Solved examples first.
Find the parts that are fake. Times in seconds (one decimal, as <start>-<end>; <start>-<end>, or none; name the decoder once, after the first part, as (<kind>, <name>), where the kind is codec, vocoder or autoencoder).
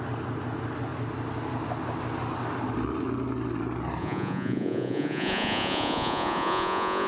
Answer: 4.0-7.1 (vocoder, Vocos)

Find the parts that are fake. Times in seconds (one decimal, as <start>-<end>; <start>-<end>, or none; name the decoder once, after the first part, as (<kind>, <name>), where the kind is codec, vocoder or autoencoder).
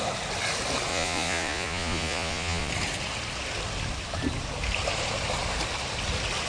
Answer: 0.9-2.7 (vocoder, Vocos)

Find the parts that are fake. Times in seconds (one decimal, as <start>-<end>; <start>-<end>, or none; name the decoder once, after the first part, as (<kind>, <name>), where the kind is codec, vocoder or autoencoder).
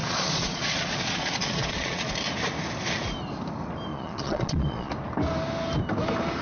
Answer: 0.0-2.1 (vocoder, Vocos); 3.9-4.9